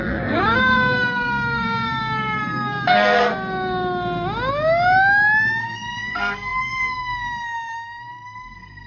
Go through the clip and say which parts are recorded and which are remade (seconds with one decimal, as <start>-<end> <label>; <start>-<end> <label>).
0.0-3.3 remade; 3.3-5.6 recorded; 5.6-8.9 remade